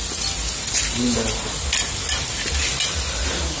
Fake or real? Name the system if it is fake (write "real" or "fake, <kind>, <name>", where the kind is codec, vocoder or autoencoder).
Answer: real